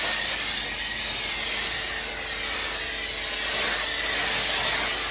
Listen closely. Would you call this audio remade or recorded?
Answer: recorded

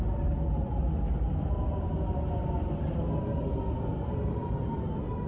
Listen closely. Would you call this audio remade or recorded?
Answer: recorded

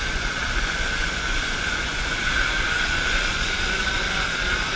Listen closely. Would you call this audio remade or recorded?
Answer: remade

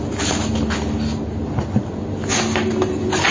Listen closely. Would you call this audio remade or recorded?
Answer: recorded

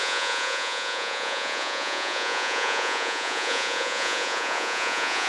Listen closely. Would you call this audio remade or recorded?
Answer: remade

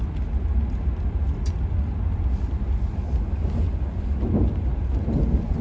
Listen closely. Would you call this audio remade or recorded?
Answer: recorded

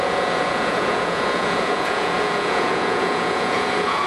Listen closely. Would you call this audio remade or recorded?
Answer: remade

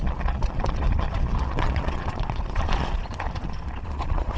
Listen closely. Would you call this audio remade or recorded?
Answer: remade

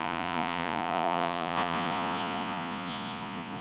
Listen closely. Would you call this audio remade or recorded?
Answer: remade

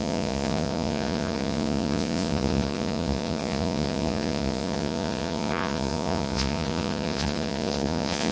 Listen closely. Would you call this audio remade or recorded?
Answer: remade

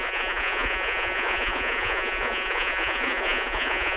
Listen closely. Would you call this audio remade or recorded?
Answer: remade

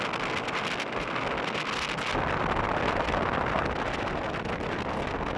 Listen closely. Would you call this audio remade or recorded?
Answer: recorded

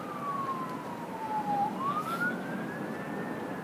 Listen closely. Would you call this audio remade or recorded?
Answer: recorded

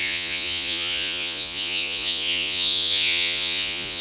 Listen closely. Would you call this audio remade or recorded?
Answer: remade